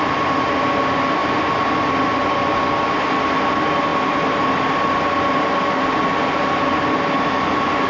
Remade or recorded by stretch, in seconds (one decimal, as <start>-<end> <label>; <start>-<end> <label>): 0.0-7.9 recorded